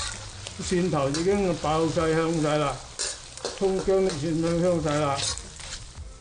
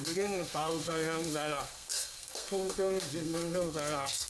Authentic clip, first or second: first